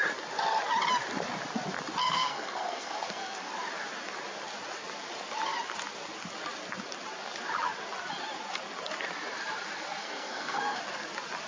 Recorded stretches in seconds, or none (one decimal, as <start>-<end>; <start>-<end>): 0.0-2.0; 3.5-10.0; 10.8-11.5

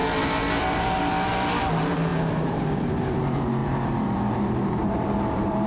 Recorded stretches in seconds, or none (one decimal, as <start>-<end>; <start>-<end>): none

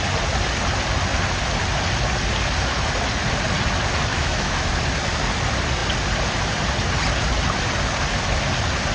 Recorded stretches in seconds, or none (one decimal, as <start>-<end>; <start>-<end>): 0.0-4.1; 4.7-8.9

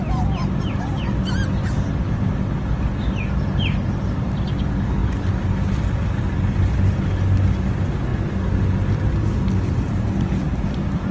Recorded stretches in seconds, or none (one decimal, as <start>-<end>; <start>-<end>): 0.0-11.1

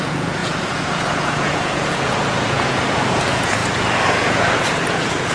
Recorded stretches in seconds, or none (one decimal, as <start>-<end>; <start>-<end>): 3.6-4.1